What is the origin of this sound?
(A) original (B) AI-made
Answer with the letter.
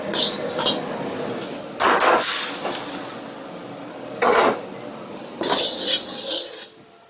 A